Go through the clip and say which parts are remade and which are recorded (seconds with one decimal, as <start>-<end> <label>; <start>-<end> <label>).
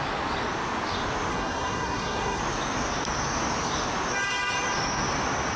0.0-1.3 recorded; 1.3-2.4 remade; 2.4-5.6 recorded